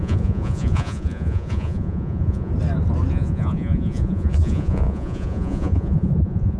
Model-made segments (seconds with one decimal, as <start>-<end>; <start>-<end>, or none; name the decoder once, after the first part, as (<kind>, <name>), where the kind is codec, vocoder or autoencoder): 0.0-2.5 (vocoder, Vocos); 3.1-6.6